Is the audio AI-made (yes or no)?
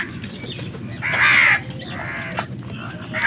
no